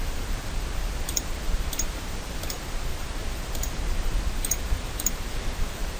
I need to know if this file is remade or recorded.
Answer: remade